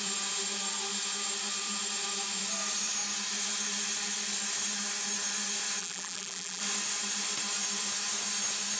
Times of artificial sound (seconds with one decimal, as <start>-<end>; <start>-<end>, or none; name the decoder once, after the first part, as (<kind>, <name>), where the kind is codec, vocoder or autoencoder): 5.8-6.6 (vocoder, BigVGAN v2)